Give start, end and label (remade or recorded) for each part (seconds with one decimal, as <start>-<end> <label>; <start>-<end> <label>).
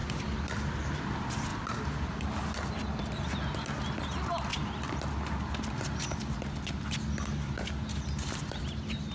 0.0-9.1 recorded